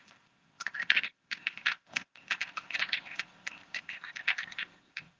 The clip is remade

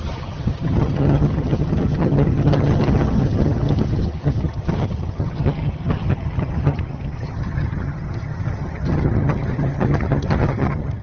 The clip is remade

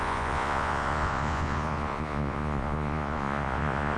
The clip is remade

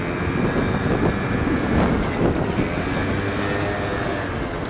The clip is recorded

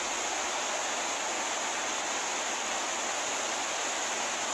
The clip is recorded